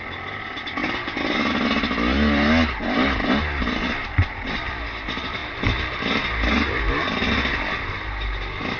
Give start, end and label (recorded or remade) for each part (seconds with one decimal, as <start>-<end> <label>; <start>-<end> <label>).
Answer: 0.0-8.8 recorded